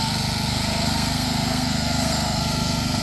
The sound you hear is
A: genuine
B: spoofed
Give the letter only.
B